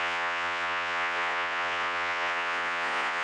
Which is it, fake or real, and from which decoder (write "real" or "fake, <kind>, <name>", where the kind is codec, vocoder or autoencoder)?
fake, vocoder, Vocos